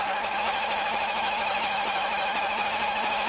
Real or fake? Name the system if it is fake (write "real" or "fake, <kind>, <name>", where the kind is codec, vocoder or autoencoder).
fake, autoencoder, DAC-VAE